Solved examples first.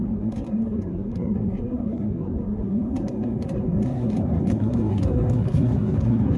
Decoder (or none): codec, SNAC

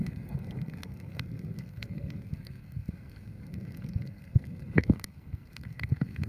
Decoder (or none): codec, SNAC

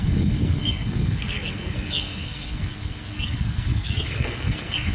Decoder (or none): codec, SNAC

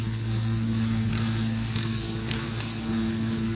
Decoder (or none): codec, SNAC